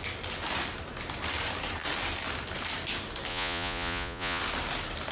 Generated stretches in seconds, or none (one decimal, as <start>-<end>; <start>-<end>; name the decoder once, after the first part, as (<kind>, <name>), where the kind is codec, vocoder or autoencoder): 3.3-4.4 (vocoder, Vocos)